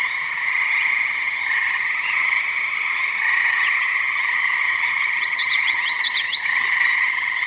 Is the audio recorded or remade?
remade